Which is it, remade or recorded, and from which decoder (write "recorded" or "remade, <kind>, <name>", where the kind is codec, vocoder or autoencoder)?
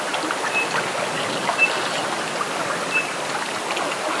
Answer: recorded